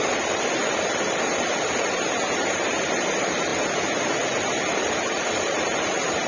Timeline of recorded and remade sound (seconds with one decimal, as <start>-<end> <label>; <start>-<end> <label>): 0.0-3.5 remade; 3.5-4.7 recorded; 4.7-6.3 remade

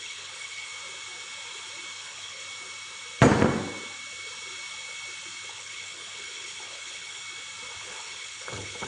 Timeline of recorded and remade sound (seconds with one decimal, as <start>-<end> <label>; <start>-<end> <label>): 0.0-0.7 remade; 0.7-2.0 recorded; 2.0-2.4 remade; 2.4-5.5 recorded; 5.5-7.2 remade; 7.2-7.8 recorded; 7.8-8.9 remade

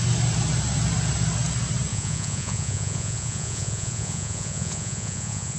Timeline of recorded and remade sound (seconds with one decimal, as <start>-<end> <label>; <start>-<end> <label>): 0.0-1.9 recorded; 1.9-5.6 remade

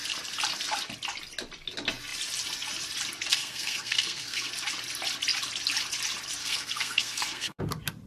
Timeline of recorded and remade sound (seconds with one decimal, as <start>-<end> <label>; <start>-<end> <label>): 0.0-3.3 recorded; 3.3-4.5 remade; 4.5-6.4 recorded; 6.4-7.6 remade; 7.6-8.1 recorded

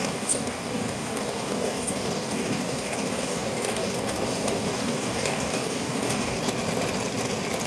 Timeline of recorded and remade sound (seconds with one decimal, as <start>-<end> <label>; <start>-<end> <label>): 0.0-6.4 remade; 6.4-7.7 recorded